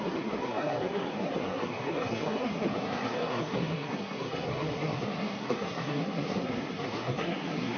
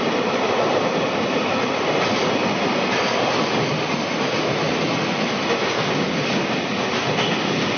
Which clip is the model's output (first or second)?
first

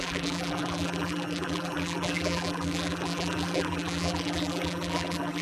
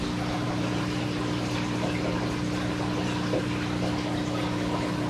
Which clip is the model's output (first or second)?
first